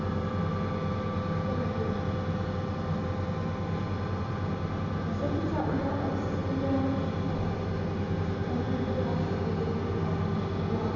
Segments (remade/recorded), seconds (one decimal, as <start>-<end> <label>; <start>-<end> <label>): 0.0-11.0 recorded